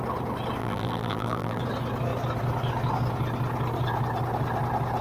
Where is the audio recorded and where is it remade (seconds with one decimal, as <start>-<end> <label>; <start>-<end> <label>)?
0.0-0.6 recorded; 0.6-1.6 remade; 1.6-5.0 recorded